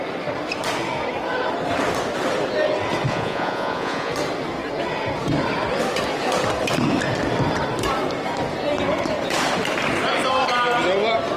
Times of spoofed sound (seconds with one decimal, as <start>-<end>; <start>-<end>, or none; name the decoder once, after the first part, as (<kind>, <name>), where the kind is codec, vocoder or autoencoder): 3.1-4.1 (vocoder, Vocos)